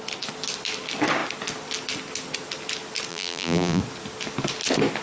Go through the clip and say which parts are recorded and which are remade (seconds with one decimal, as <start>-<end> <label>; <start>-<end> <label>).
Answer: 0.0-3.1 recorded; 3.1-3.8 remade; 3.8-5.0 recorded